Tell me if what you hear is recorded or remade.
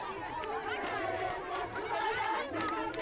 remade